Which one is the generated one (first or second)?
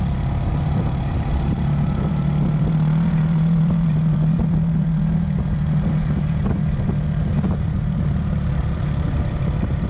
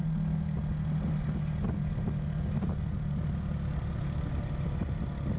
first